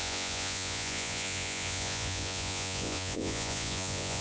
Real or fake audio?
fake